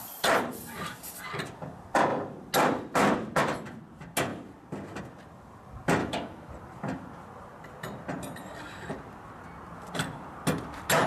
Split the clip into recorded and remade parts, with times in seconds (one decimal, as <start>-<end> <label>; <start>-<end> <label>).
0.0-6.0 recorded; 6.0-6.5 remade; 6.5-11.1 recorded